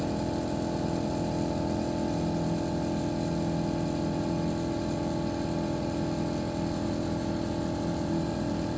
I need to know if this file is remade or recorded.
recorded